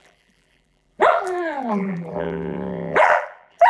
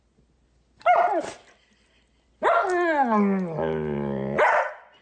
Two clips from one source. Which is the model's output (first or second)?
first